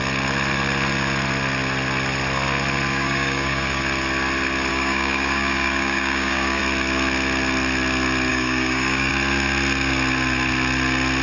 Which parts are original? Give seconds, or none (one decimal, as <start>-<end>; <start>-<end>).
0.0-2.9; 3.8-4.7; 6.6-8.3; 9.1-11.2

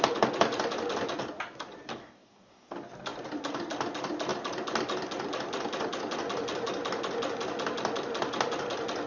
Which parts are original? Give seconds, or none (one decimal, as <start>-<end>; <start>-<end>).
0.0-1.9; 2.7-9.1

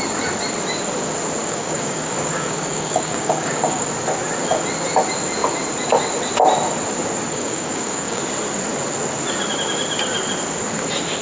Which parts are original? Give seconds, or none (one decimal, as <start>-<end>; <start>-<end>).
0.0-1.4; 3.9-7.3; 8.2-11.2

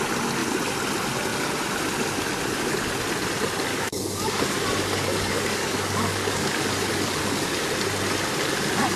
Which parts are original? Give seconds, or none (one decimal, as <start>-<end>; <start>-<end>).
0.0-3.7; 7.7-9.0

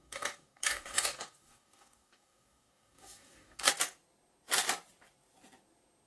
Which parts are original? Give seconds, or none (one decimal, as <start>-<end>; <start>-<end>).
3.7-6.1

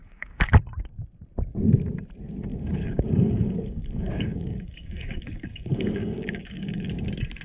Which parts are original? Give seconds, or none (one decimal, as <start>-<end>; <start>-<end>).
0.5-2.5; 6.9-7.4

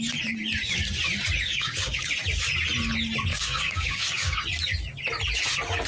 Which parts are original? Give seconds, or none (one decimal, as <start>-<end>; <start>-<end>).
0.0-1.5; 2.0-3.3; 4.4-5.9

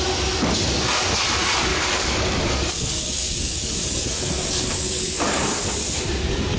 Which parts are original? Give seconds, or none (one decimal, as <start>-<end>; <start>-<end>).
0.0-1.7; 5.7-6.6